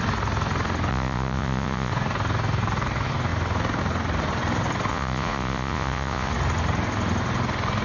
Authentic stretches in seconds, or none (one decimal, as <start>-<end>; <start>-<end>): 0.0-0.9; 1.9-4.9; 6.3-7.8